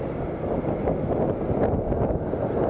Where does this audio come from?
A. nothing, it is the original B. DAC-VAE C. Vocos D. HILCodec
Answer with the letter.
A